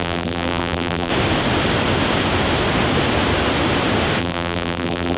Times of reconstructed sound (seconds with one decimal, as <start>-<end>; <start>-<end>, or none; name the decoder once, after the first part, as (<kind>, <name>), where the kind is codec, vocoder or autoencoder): 0.0-1.1 (vocoder, BigVGAN v2); 4.2-5.2